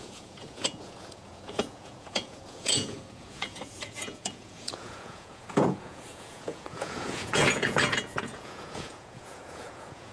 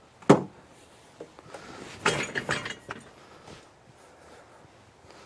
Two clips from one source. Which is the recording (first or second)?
second